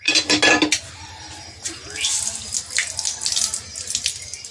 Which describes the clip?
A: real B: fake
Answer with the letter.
A